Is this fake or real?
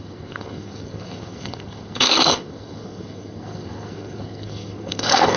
fake